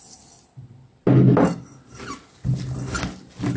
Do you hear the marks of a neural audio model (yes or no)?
no